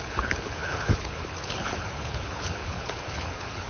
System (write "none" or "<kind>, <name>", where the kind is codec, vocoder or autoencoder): codec, HILCodec